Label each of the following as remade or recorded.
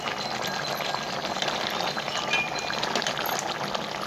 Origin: recorded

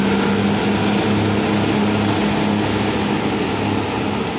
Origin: recorded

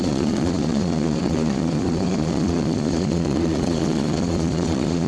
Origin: remade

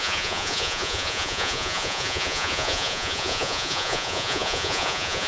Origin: remade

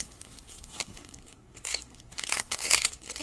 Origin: remade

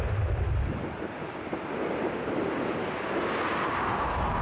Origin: recorded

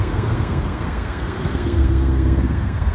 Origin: remade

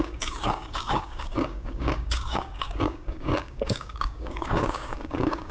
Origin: remade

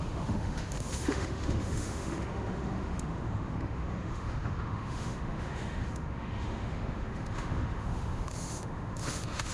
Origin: remade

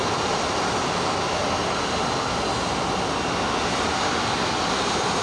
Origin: recorded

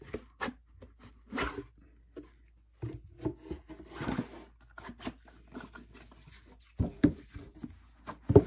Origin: recorded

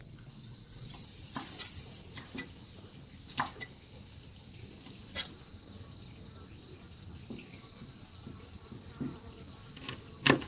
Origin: recorded